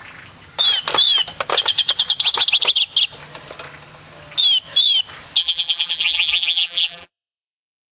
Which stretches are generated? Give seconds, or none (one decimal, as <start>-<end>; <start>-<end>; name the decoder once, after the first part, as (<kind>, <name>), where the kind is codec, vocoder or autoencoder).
5.4-7.9 (vocoder, BigVGAN v2)